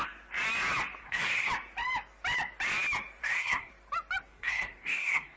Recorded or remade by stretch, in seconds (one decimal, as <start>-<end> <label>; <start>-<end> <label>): 0.0-1.0 recorded; 1.0-1.5 remade; 1.5-3.2 recorded; 3.2-3.7 remade; 3.7-4.3 recorded; 4.3-5.4 remade